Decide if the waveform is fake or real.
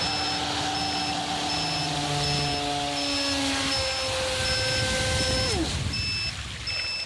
real